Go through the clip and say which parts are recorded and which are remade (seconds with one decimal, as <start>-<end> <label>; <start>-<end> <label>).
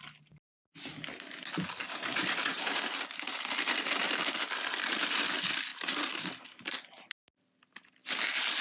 0.0-2.5 recorded; 2.5-3.1 remade; 3.1-5.7 recorded; 5.7-6.3 remade; 6.3-8.6 recorded